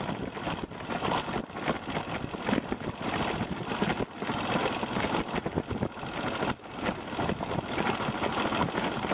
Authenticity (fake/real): real